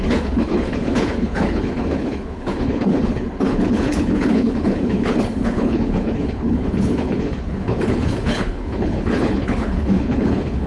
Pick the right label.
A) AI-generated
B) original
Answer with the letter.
A